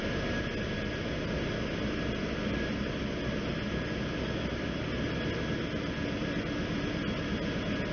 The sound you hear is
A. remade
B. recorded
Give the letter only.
B